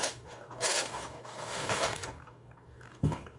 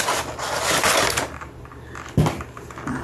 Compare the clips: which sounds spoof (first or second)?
first